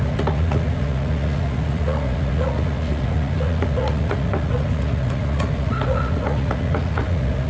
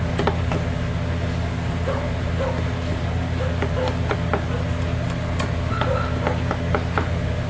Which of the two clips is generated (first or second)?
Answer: first